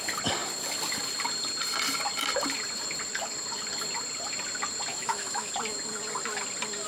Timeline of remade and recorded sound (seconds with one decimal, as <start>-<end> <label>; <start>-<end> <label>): 0.0-4.9 recorded; 4.9-5.5 remade; 5.5-6.9 recorded